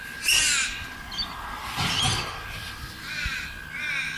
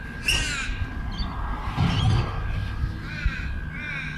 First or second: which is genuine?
second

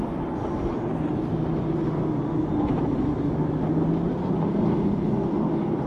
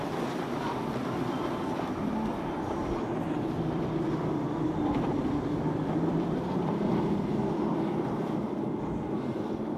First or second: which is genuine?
first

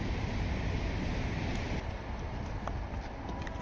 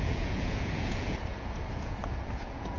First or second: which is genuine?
first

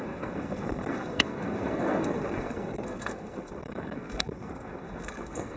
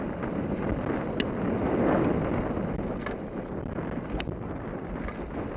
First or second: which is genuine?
second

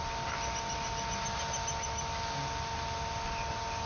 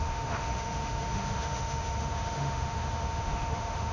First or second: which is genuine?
first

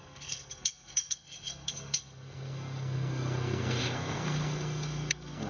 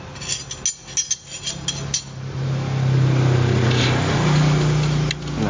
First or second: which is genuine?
second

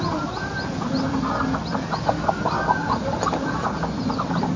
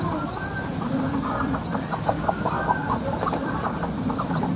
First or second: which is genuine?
first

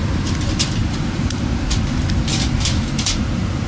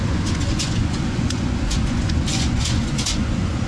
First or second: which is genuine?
first